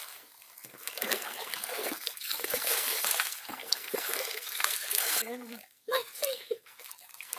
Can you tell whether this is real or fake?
fake